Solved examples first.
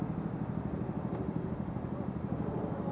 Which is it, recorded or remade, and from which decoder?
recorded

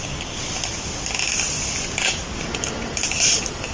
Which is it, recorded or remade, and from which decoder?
recorded